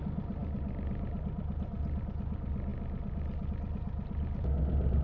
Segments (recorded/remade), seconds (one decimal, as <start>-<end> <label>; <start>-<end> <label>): 0.0-5.0 recorded